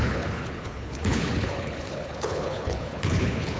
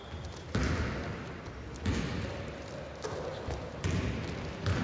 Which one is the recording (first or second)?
second